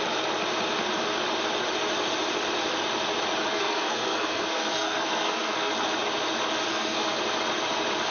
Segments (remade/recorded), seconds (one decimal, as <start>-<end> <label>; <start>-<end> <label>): 0.0-3.5 recorded; 3.5-5.7 remade; 5.7-6.7 recorded; 6.7-7.2 remade; 7.2-8.1 recorded